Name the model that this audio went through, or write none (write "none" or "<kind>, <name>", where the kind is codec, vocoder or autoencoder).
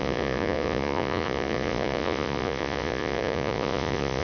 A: vocoder, Vocos